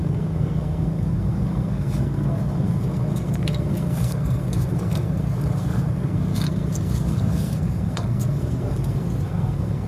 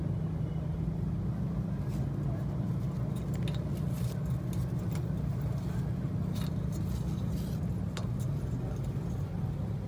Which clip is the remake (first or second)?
first